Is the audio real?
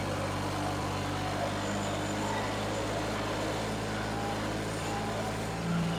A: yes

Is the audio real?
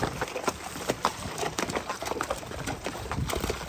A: yes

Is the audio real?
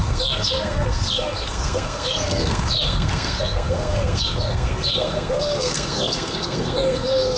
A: no